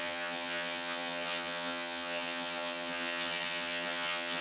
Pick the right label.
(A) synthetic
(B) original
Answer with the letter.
A